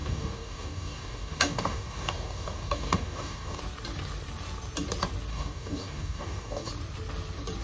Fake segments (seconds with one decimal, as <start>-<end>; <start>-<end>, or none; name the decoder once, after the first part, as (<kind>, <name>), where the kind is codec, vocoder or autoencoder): 0.0-3.6 (codec, DAC); 5.3-6.7